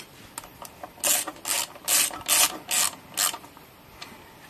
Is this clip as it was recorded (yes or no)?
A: yes